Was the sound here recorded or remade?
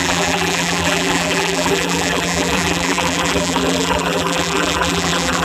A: remade